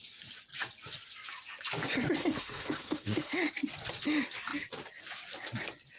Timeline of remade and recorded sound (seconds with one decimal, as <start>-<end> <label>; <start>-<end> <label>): 0.0-2.2 recorded; 2.2-3.4 remade; 3.4-6.0 recorded